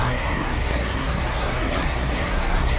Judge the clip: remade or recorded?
remade